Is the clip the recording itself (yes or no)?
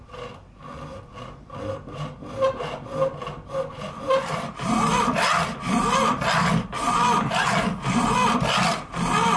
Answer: yes